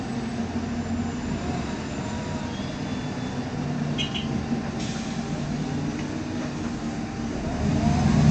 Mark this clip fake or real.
real